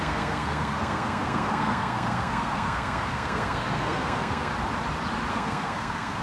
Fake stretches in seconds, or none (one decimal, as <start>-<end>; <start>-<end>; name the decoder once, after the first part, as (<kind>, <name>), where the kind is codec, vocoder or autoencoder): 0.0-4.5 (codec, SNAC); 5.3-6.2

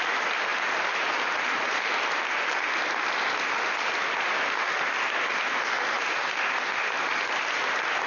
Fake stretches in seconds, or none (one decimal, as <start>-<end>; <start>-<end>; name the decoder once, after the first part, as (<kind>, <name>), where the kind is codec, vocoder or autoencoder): none

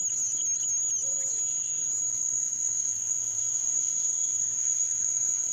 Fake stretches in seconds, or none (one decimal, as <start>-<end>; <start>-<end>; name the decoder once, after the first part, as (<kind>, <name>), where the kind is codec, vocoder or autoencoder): 2.1-5.5 (codec, SNAC)